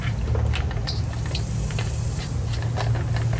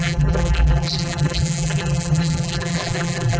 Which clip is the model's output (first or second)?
second